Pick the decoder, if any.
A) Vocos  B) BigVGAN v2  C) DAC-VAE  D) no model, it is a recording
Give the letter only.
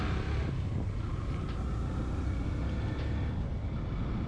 D